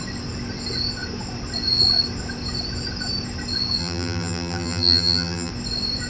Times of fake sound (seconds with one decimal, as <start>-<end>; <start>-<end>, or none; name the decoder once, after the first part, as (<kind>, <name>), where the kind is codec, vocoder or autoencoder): 3.8-5.5 (vocoder, BigVGAN v2)